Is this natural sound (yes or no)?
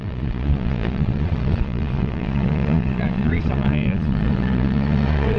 no